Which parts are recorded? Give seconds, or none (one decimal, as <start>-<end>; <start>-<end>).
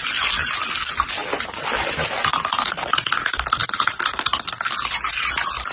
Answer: 0.0-5.7